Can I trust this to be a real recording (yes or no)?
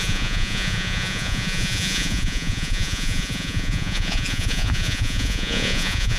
no